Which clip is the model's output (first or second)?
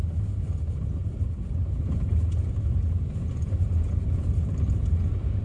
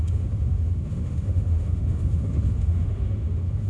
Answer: second